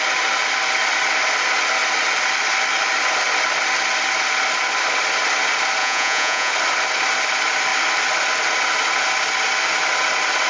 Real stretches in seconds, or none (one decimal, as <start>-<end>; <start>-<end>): 0.0-5.8; 6.5-10.5